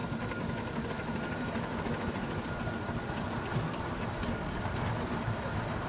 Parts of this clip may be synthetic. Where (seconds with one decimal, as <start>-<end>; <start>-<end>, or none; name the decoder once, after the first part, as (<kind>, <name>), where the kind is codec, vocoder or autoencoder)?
none